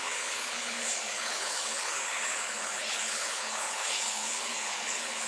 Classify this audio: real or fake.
fake